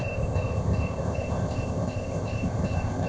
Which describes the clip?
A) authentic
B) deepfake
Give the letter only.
B